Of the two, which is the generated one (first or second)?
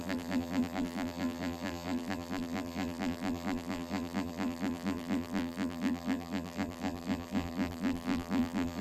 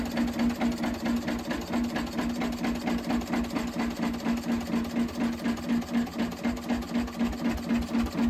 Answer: first